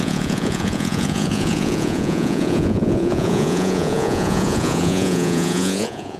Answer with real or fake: fake